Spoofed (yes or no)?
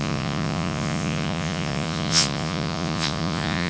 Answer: yes